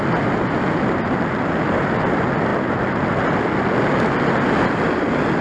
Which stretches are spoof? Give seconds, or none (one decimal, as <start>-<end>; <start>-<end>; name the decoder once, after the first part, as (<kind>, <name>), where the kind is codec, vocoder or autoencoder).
none